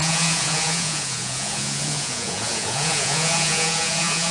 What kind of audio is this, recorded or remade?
remade